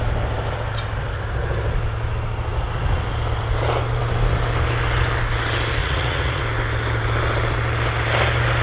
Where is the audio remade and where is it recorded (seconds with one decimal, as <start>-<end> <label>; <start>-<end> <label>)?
0.0-5.8 recorded; 5.8-6.4 remade; 6.4-8.6 recorded